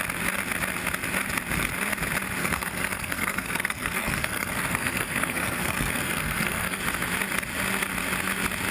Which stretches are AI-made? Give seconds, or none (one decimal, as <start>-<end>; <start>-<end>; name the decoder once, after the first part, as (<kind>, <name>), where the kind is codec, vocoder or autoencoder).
2.4-6.8 (codec, SNAC)